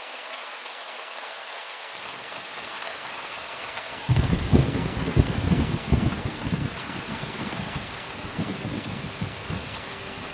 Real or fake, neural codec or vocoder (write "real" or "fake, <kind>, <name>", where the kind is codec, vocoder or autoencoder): fake, codec, SNAC